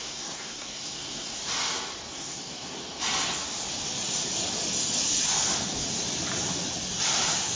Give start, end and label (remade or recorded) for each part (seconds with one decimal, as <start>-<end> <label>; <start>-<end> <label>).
0.0-1.4 remade; 1.4-2.1 recorded; 2.1-2.8 remade; 2.8-7.6 recorded